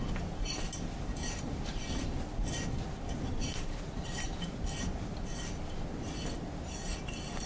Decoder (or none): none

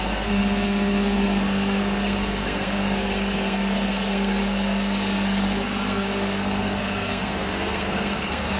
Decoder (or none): codec, SNAC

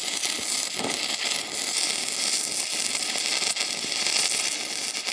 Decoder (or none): none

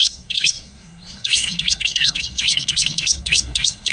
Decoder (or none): codec, SNAC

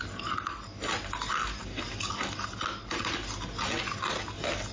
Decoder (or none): none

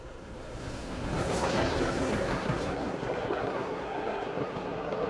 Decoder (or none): codec, SNAC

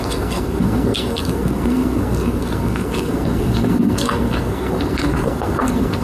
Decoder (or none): codec, SNAC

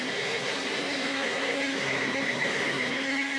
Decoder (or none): codec, SNAC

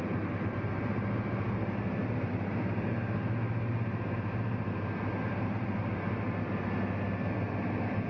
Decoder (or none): none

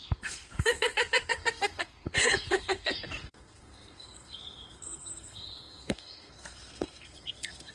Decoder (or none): codec, SNAC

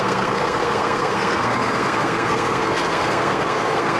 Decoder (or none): codec, SNAC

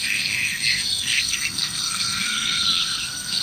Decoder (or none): codec, SNAC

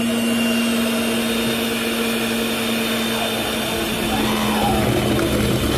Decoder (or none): none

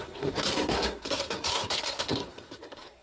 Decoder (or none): codec, SNAC